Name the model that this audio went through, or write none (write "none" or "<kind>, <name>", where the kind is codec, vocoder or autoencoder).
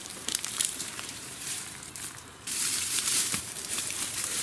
vocoder, BigVGAN v2